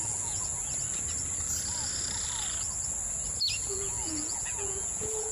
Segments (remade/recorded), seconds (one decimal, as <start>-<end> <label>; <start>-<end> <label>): 0.0-0.5 remade; 0.5-3.7 recorded; 3.7-5.3 remade